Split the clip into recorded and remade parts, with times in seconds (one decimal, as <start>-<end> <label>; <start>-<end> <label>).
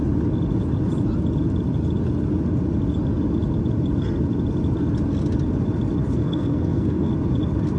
0.0-6.2 recorded; 6.2-7.1 remade; 7.1-7.8 recorded